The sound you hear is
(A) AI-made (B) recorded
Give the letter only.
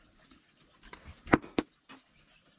B